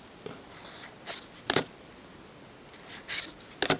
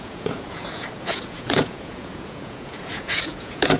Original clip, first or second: first